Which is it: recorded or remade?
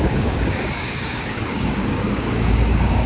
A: remade